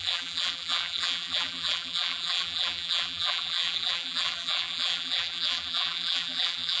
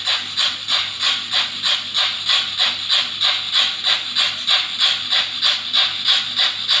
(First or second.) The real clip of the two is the second